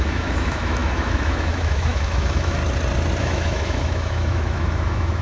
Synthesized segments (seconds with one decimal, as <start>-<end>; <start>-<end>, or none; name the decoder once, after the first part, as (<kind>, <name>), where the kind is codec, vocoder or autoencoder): 0.0-2.6 (autoencoder, DAC-VAE); 3.2-5.2